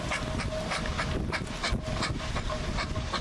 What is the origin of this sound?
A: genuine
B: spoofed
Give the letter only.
A